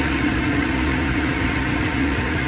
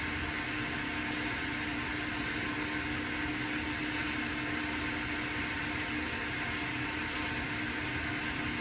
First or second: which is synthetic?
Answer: first